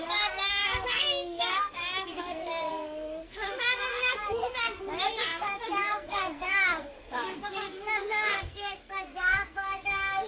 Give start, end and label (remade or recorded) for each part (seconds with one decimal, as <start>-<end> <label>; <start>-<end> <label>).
0.0-10.3 remade